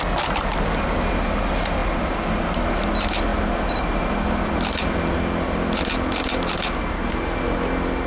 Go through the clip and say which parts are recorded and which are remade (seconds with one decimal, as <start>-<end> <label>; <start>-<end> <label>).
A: 0.0-8.1 recorded